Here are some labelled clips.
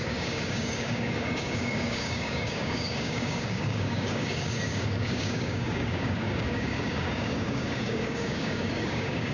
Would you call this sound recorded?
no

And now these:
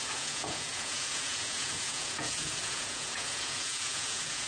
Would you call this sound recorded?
no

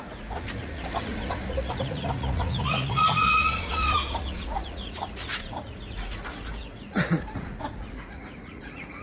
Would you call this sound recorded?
no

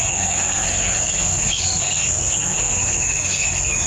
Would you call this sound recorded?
no